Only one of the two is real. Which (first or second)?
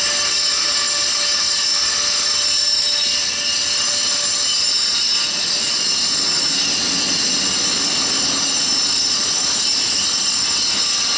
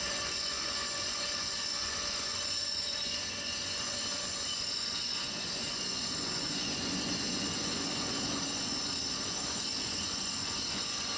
first